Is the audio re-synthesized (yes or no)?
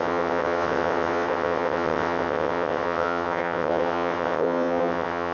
yes